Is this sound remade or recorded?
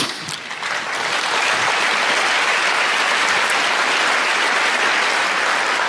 recorded